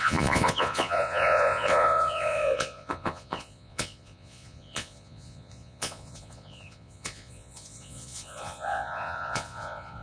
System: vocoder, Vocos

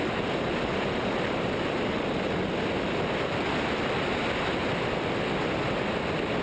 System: none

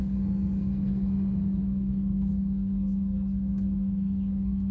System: codec, SNAC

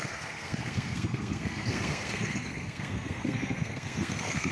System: codec, SNAC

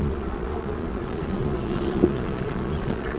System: vocoder, Vocos